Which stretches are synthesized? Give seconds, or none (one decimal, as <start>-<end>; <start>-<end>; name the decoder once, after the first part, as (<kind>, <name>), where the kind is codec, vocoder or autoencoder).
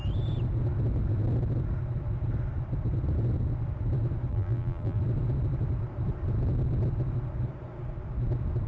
4.3-5.0 (vocoder, BigVGAN v2)